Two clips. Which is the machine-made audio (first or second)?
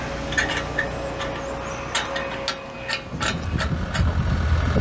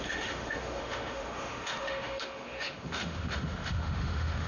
second